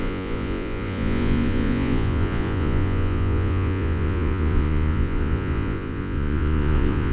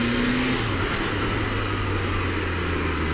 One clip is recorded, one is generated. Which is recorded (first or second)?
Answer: second